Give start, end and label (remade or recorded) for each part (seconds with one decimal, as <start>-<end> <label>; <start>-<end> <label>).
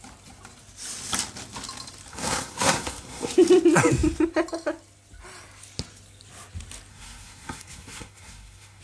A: 0.0-2.1 recorded; 2.1-3.3 remade; 3.3-6.9 recorded; 6.9-8.8 remade